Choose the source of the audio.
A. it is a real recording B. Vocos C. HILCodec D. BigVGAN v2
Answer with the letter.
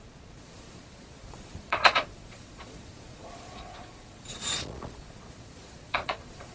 B